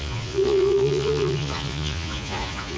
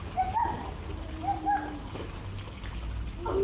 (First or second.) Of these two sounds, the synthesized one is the first